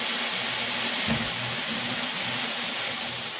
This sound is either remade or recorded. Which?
recorded